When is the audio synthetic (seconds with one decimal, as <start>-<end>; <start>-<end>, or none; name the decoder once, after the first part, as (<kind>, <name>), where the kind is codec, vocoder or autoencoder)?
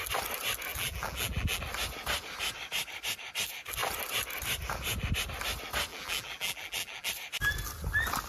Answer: 0.7-1.6 (vocoder, BigVGAN v2); 5.9-7.1